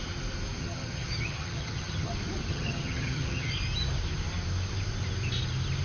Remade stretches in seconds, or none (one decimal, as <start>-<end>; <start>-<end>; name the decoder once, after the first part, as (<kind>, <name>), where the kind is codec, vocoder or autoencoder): 0.6-2.1 (vocoder, HiFi-GAN); 2.5-3.5